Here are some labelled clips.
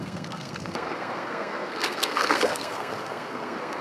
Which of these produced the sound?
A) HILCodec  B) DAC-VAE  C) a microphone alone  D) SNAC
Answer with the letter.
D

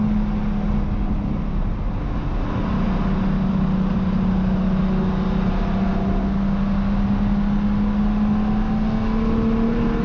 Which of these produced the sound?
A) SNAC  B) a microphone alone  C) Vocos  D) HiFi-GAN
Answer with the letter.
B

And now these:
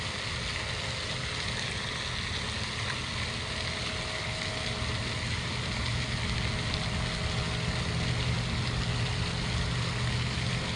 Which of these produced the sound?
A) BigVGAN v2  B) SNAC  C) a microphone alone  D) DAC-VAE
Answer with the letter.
C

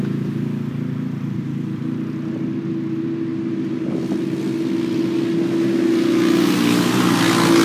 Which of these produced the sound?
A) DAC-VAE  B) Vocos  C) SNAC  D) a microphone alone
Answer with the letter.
D